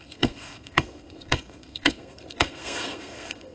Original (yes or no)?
no